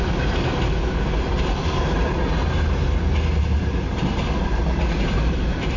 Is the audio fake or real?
real